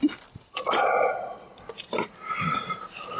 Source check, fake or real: real